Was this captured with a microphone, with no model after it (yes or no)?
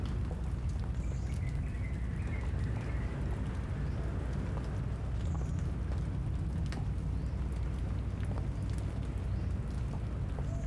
yes